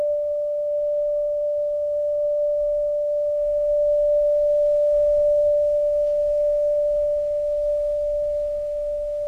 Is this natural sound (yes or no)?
no